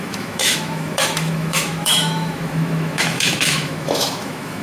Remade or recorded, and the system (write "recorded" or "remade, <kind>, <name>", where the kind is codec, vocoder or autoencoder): remade, autoencoder, DAC-VAE